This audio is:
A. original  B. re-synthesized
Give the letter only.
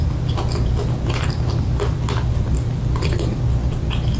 A